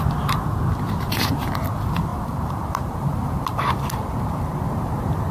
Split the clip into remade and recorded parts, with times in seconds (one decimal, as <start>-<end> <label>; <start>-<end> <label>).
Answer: 0.0-2.1 recorded; 2.1-5.3 remade

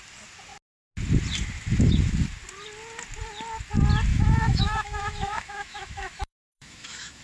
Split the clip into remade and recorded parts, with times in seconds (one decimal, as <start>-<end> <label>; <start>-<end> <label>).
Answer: 0.0-4.1 recorded; 4.1-7.2 remade

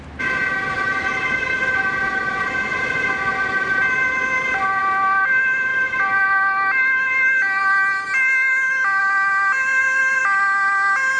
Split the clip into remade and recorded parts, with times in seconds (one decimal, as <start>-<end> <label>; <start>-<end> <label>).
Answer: 0.0-11.2 recorded

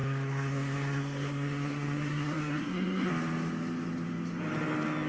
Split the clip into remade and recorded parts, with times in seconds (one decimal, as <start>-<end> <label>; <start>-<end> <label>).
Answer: 0.0-3.1 remade; 3.1-5.1 recorded

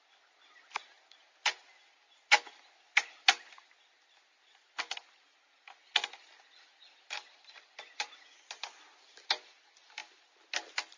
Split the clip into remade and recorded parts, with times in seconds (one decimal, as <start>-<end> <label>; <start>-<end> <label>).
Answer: 0.0-11.0 recorded